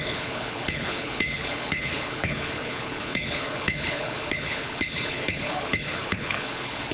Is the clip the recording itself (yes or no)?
no